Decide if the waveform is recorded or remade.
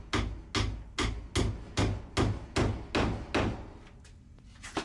recorded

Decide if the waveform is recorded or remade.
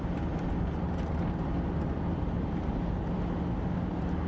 recorded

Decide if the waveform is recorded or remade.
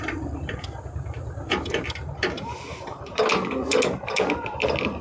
recorded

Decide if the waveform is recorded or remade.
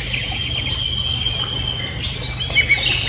recorded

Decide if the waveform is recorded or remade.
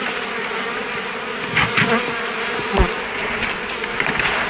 remade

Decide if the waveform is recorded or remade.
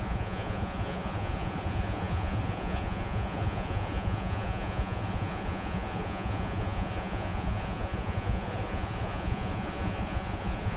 remade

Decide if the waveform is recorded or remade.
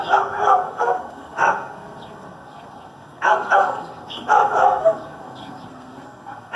remade